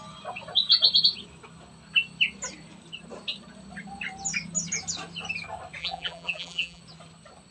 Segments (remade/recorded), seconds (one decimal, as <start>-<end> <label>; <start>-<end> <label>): 0.0-5.8 recorded; 5.8-6.8 remade; 6.8-7.5 recorded